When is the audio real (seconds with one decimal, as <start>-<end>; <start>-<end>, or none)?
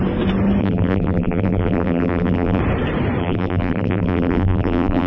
0.0-0.6; 2.6-3.2